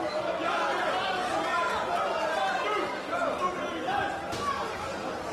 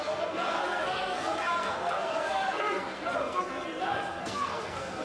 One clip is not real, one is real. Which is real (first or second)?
first